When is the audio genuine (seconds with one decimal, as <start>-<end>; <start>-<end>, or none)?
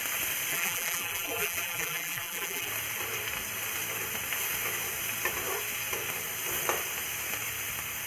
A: 0.0-0.5; 2.7-8.1